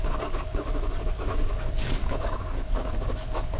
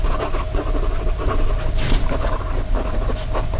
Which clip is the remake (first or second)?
first